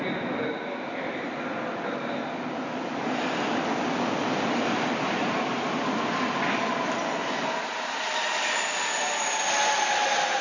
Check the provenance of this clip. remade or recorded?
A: recorded